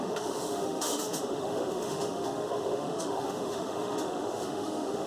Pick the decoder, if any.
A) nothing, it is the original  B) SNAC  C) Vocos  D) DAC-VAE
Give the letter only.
D